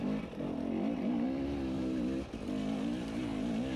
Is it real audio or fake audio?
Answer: real